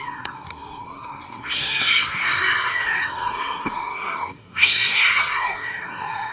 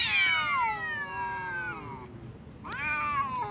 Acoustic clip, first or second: second